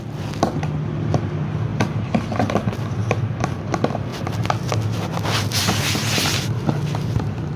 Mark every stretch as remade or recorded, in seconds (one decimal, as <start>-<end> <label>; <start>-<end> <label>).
0.0-7.6 recorded